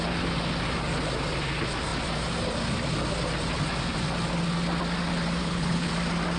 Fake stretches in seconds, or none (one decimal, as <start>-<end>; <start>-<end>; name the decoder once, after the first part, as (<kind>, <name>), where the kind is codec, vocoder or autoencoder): 5.4-5.9 (codec, HILCodec)